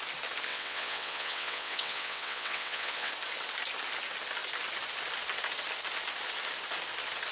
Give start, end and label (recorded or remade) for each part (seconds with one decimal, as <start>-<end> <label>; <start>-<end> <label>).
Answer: 0.0-0.5 recorded; 0.5-3.1 remade; 3.1-7.3 recorded